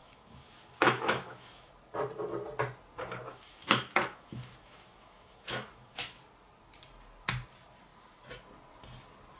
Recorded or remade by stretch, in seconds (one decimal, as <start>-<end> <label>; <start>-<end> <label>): 0.0-1.7 remade; 1.7-3.3 recorded; 3.3-6.2 remade; 6.2-9.4 recorded